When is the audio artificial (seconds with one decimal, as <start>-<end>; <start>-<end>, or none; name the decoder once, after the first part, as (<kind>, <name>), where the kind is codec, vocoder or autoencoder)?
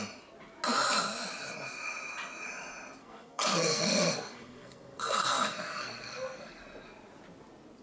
3.0-6.6 (codec, SNAC)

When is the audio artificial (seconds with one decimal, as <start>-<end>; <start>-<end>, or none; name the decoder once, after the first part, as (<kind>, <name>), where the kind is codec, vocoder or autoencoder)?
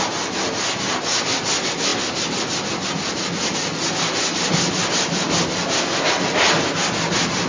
none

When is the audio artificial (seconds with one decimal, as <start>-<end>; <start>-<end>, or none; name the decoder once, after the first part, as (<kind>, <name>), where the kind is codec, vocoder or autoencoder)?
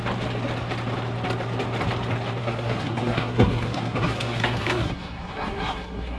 2.4-6.2 (codec, SNAC)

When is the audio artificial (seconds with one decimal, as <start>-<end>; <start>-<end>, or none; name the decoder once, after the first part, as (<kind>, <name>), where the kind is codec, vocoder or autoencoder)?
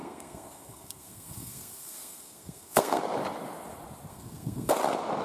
0.0-3.0 (codec, SNAC); 4.1-4.7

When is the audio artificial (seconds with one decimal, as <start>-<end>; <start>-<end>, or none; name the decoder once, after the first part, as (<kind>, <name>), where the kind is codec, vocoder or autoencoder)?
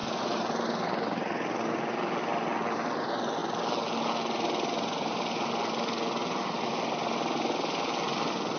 none